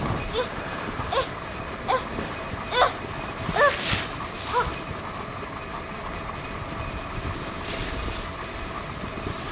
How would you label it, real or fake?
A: real